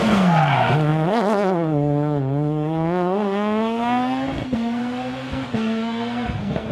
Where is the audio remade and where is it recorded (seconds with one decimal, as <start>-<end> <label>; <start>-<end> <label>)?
0.0-6.7 remade